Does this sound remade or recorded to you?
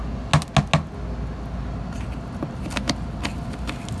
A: recorded